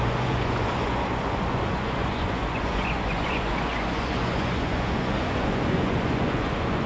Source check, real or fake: fake